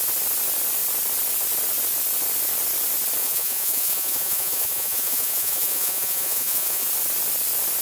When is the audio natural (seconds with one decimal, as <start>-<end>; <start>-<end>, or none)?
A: 0.0-3.2; 6.9-7.8